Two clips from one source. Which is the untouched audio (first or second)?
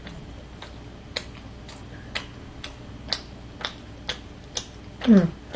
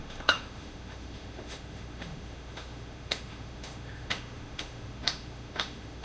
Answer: first